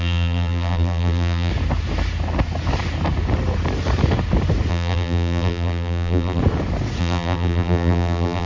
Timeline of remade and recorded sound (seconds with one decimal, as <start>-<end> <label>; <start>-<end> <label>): 0.0-1.5 remade; 1.5-4.7 recorded; 4.7-6.4 remade; 6.4-7.0 recorded; 7.0-8.5 remade